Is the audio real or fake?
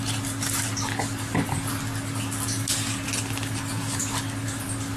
real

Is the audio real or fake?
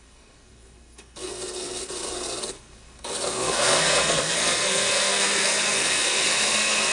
fake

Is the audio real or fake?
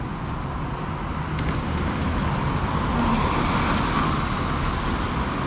real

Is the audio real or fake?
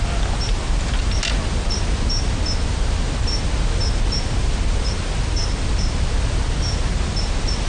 real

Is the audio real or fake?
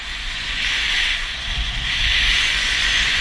fake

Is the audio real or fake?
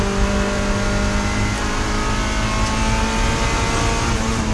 real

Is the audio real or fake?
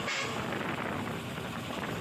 real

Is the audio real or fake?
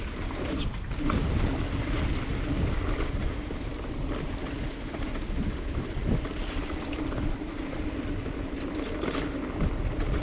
real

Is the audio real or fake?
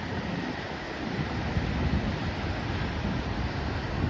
real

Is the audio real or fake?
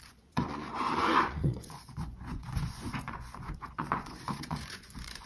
fake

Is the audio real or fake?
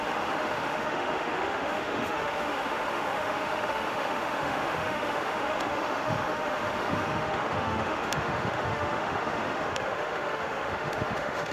fake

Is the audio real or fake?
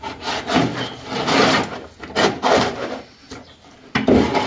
real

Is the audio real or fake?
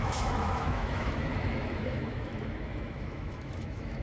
fake